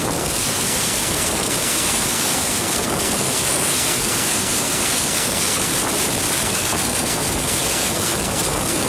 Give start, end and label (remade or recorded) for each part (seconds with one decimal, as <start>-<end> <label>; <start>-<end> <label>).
0.0-5.7 remade; 5.7-6.3 recorded; 6.3-8.9 remade